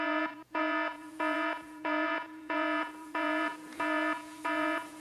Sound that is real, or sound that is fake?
fake